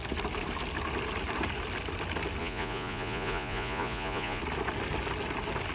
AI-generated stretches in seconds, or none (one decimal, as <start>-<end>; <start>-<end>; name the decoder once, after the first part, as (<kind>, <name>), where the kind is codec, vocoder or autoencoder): 2.4-4.4 (vocoder, Vocos)